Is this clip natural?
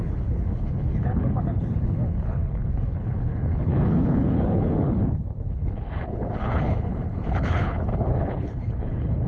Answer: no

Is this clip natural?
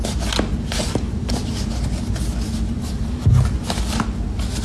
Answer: yes